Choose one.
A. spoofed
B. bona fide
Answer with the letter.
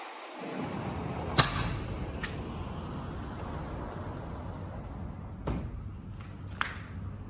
B